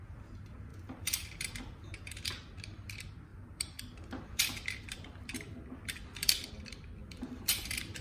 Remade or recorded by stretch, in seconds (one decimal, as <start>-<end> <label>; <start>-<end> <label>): 0.0-0.7 recorded; 0.7-2.1 remade; 2.1-3.3 recorded; 3.3-6.5 remade; 6.5-7.0 recorded; 7.0-8.0 remade